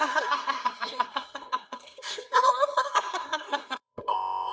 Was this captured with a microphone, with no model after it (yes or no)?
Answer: no